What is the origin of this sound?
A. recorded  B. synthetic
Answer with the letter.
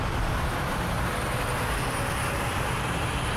A